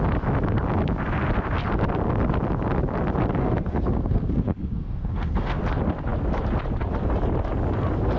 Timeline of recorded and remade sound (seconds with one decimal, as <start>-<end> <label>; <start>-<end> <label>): 0.0-3.4 recorded; 3.4-5.6 remade; 5.6-8.2 recorded